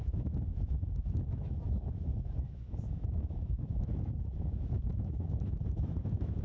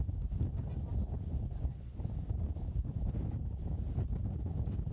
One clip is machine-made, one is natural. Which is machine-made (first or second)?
first